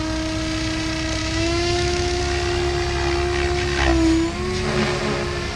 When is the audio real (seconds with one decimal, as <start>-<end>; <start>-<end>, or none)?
0.0-1.2; 2.2-5.6